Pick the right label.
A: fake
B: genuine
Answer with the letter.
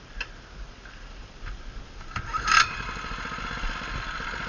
B